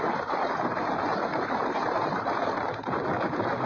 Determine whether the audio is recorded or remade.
remade